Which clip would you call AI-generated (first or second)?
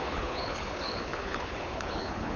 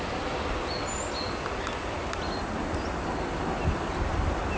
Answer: first